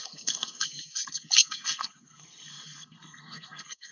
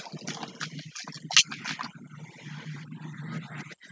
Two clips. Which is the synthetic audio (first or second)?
first